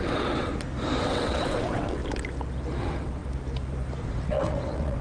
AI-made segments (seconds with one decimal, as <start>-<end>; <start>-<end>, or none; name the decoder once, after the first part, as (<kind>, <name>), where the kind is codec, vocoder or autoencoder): 0.0-0.5 (vocoder, WaveNeXt); 1.0-2.0; 2.8-3.2; 4.0-5.0